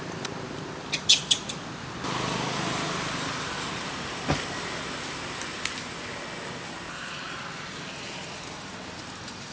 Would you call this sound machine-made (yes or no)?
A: no